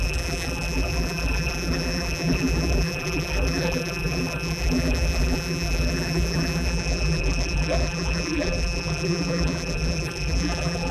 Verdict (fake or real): fake